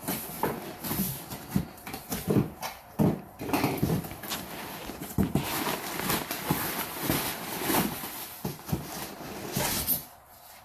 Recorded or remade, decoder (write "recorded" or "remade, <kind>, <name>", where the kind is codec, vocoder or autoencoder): recorded